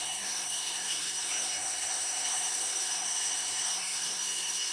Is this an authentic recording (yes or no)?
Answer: no